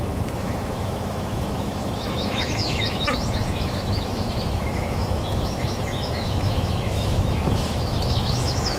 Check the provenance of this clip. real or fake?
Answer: fake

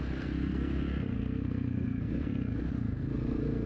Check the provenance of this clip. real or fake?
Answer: fake